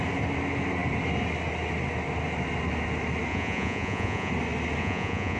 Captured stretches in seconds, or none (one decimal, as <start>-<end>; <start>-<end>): 0.0-3.3; 4.3-4.8

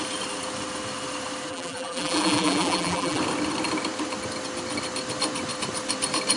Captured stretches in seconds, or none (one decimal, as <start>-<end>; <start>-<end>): 0.0-1.5; 3.2-6.4

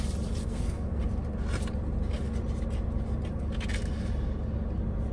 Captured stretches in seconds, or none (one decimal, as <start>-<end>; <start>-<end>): 0.0-0.4; 1.0-5.1

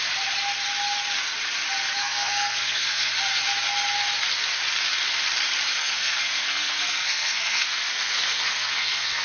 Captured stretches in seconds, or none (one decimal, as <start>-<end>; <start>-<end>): 0.0-2.0; 3.1-5.8

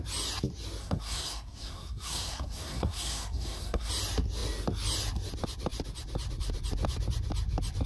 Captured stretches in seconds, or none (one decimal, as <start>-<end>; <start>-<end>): 0.0-0.8; 3.9-7.9